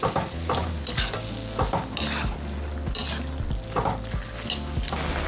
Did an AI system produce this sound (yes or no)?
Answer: no